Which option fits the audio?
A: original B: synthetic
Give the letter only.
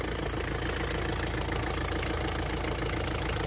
A